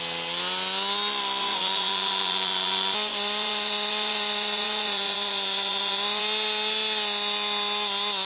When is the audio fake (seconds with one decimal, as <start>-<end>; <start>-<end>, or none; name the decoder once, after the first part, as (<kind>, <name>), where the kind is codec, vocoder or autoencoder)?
1.4-6.2 (vocoder, Vocos)